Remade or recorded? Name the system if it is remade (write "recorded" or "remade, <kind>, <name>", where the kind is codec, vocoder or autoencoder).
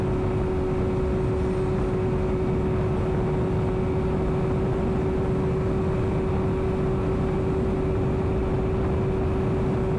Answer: recorded